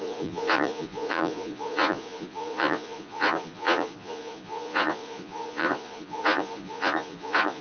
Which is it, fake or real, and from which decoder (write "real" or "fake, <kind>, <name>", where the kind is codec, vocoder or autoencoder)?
fake, vocoder, Vocos